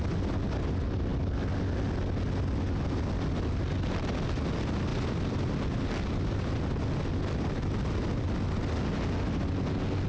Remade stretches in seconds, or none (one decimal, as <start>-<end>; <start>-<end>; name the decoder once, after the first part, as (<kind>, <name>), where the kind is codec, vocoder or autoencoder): 4.9-8.8 (vocoder, BigVGAN v2)